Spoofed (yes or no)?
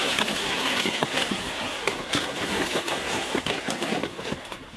yes